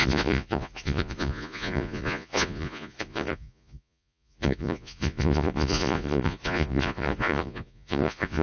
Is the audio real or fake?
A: fake